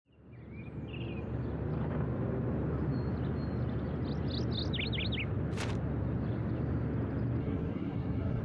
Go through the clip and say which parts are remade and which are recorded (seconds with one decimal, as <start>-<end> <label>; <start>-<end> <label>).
0.0-7.4 recorded; 7.4-8.4 remade